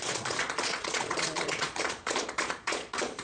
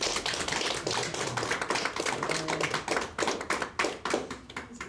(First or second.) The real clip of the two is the second